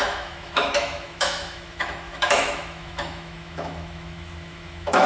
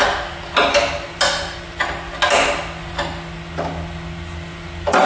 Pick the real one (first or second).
second